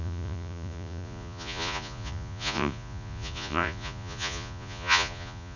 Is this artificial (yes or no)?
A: yes